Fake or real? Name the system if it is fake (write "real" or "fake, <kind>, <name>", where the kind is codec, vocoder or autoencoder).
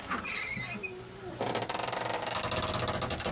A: real